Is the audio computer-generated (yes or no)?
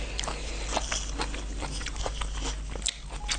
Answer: no